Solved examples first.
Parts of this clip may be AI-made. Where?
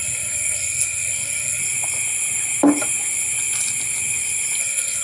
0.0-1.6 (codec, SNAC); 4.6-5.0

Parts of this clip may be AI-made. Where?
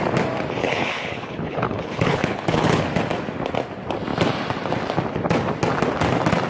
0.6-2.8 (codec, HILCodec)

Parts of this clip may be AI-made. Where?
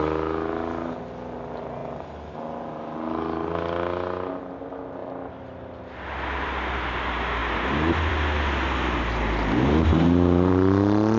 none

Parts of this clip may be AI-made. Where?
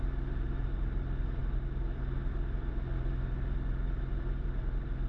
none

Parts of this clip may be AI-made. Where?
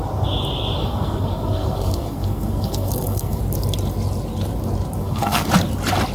0.8-3.4 (codec, SNAC); 5.0-5.5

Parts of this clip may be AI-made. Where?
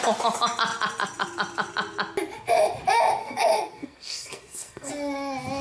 3.2-4.9 (codec, SNAC)